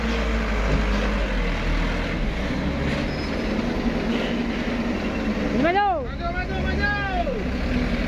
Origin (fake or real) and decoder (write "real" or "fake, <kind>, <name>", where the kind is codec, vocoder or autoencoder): real